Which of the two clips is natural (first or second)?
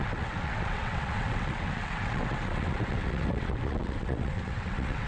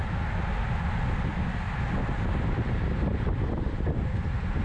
second